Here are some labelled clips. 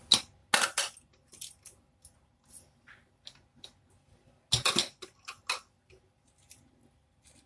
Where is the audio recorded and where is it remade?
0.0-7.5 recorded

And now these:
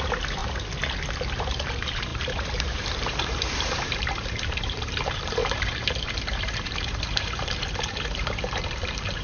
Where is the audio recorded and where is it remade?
0.0-0.4 remade; 0.4-1.4 recorded; 1.4-9.2 remade

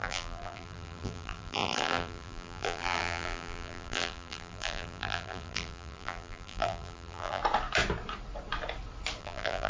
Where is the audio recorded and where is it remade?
0.0-7.4 remade; 7.4-9.2 recorded; 9.2-9.7 remade

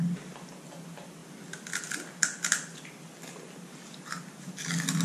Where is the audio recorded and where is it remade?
0.0-5.0 recorded

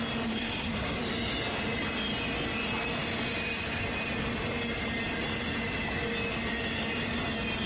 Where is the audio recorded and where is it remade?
0.0-0.4 recorded; 0.4-1.0 remade; 1.0-7.7 recorded

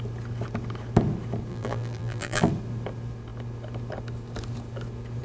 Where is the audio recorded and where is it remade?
0.0-1.5 recorded; 1.5-2.5 remade; 2.5-5.2 recorded